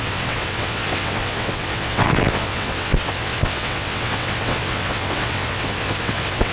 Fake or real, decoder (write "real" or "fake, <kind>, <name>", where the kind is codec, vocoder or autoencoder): fake, vocoder, WaveNeXt